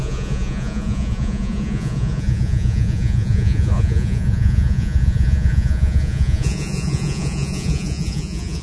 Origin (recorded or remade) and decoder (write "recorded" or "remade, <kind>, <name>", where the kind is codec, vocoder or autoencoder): remade, vocoder, Vocos